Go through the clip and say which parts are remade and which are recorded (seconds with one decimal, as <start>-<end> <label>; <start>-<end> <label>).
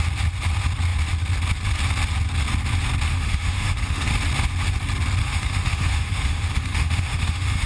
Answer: 0.0-3.1 recorded; 3.1-4.1 remade; 4.1-5.2 recorded; 5.2-7.7 remade